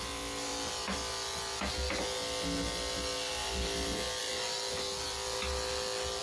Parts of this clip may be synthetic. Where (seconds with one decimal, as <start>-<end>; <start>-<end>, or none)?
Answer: none